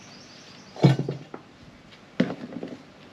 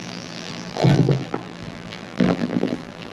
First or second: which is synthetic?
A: second